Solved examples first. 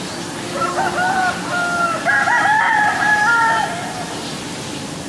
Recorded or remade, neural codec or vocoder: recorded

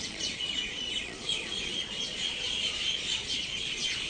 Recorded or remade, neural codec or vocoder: remade, vocoder, Vocos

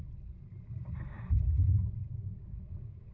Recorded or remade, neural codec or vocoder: recorded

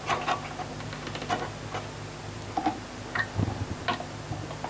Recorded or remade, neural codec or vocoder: recorded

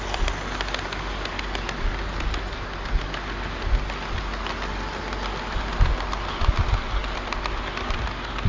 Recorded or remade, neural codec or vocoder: recorded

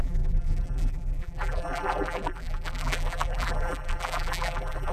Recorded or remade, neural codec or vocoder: remade, vocoder, BigVGAN v2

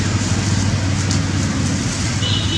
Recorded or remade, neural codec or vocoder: recorded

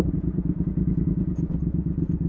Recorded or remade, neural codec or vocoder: remade, vocoder, Vocos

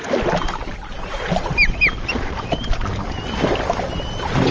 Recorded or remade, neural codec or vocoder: remade, vocoder, BigVGAN v2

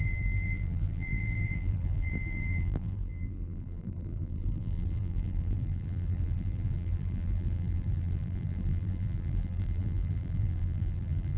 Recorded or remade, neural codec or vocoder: remade, vocoder, BigVGAN v2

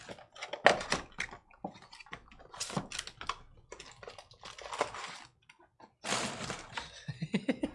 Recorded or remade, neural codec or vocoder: recorded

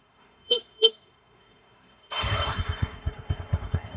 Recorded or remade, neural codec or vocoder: remade, codec, SNAC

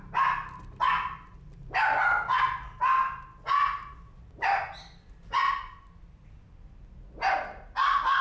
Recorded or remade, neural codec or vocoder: recorded